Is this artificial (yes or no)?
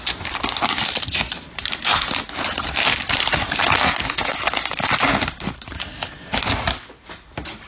no